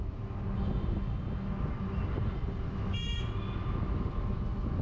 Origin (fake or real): real